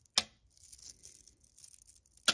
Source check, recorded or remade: recorded